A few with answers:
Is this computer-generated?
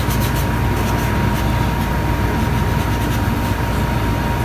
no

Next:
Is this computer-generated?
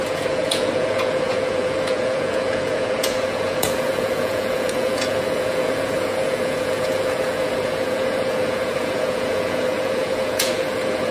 yes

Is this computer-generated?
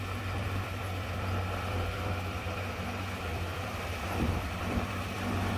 yes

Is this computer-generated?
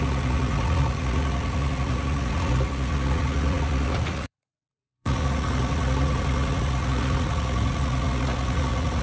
yes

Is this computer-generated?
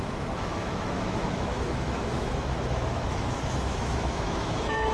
yes